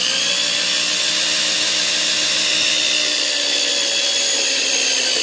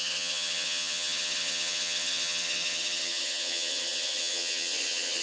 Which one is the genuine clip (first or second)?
first